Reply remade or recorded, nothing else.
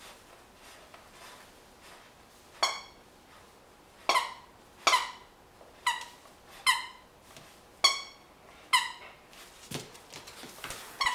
recorded